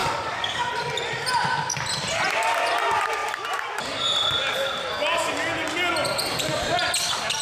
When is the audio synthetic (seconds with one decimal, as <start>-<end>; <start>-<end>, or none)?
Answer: 0.0-0.7